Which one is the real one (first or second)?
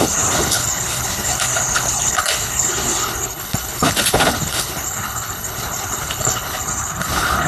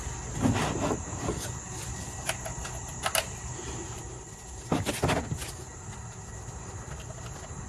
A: second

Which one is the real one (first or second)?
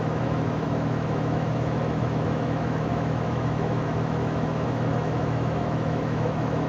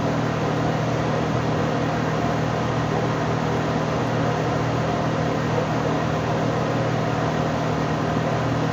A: second